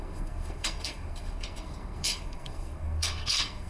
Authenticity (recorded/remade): remade